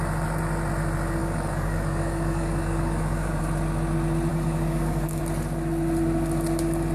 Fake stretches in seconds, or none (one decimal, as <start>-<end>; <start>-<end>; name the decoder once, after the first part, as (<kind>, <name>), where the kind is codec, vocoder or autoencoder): 1.2-3.4 (codec, DAC); 4.3-5.2